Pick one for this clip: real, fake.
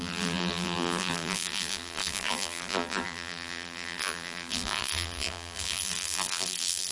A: fake